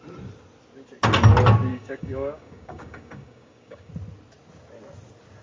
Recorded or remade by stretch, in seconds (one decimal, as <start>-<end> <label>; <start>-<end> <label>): 0.0-1.7 recorded; 1.7-3.9 remade; 3.9-5.4 recorded